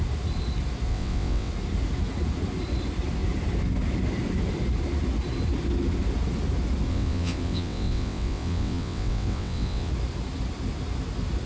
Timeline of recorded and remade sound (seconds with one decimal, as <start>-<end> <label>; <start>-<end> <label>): 0.0-0.9 recorded; 0.9-1.5 remade; 1.5-6.9 recorded; 6.9-9.9 remade; 9.9-11.5 recorded